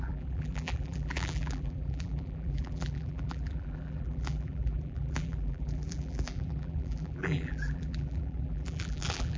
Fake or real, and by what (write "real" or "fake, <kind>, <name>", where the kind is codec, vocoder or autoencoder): fake, vocoder, BigVGAN v2